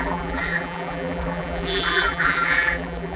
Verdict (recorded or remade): remade